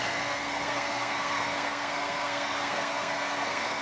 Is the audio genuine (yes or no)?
no